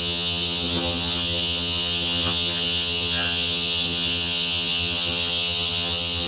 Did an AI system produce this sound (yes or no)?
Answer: yes